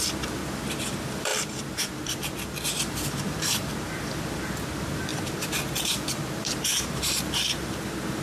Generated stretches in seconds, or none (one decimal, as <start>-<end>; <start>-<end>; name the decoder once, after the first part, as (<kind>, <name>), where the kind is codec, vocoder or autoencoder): 0.0-8.2 (vocoder, BigVGAN v2)